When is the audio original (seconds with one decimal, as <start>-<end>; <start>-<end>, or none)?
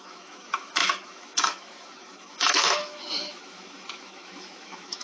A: none